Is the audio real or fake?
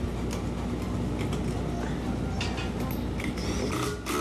real